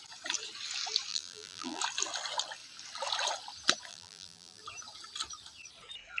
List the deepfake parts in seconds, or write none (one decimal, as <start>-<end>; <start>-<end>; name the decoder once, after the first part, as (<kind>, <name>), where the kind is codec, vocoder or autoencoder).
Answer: 1.1-1.8 (vocoder, BigVGAN v2); 3.9-4.6